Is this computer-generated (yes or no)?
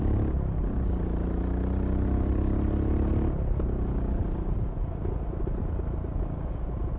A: no